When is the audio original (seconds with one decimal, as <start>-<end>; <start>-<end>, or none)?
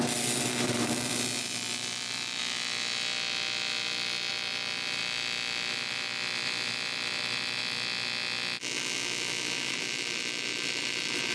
2.4-4.3; 5.0-5.7; 7.6-9.7